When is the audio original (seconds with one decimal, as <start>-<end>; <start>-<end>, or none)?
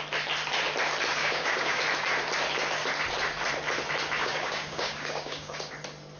0.0-1.2; 1.8-4.2; 5.7-6.2